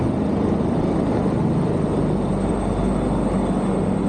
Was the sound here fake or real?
real